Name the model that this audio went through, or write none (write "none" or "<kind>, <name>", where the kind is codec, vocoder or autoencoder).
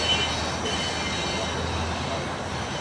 none